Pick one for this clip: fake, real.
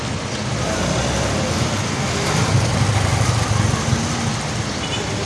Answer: real